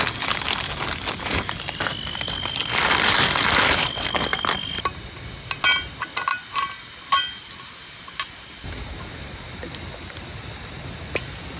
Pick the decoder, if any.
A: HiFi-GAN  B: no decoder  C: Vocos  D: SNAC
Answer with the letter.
B